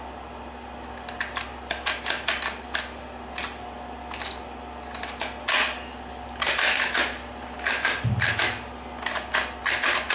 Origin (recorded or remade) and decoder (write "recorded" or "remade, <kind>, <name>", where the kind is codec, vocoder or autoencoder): recorded